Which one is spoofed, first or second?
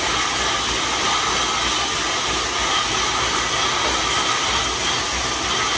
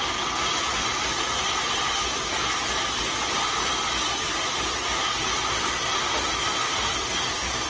second